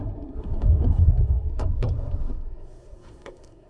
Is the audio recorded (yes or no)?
no